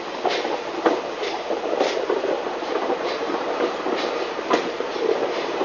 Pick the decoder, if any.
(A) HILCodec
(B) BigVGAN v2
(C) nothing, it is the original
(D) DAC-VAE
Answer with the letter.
B